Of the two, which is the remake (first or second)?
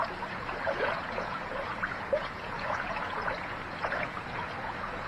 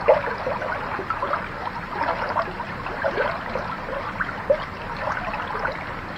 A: first